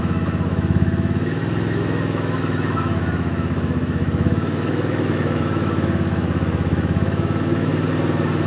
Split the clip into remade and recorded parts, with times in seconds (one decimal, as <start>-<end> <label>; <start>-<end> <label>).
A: 0.0-7.7 remade; 7.7-8.5 recorded